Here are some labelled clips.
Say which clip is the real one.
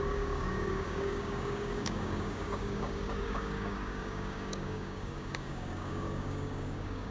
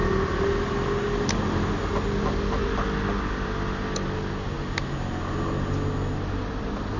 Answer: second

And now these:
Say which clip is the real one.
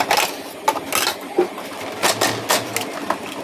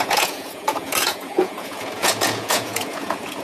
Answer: first